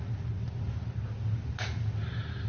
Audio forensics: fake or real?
real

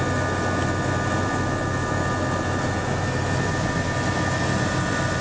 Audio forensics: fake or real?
real